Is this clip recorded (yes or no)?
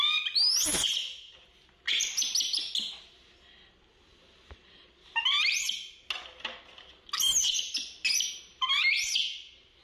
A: yes